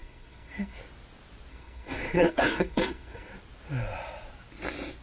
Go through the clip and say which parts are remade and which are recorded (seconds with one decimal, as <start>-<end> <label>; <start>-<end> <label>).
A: 0.0-0.8 remade; 0.8-1.5 recorded; 1.5-3.3 remade; 3.3-5.0 recorded